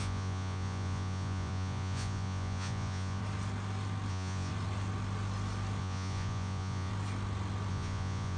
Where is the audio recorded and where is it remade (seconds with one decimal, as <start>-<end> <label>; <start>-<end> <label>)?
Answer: 0.0-3.2 remade; 3.2-4.1 recorded; 4.1-4.5 remade; 4.5-5.8 recorded; 5.8-6.9 remade; 6.9-7.7 recorded; 7.7-8.4 remade